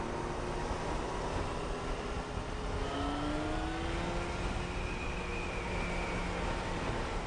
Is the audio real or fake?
real